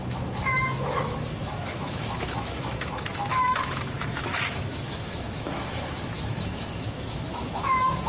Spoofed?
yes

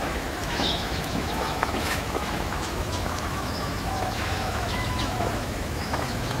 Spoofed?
yes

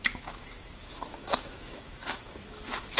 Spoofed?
yes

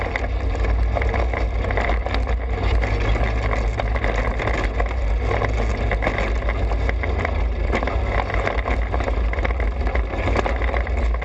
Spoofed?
no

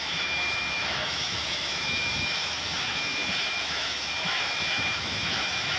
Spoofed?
yes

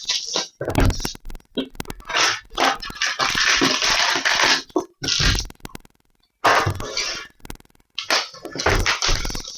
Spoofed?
no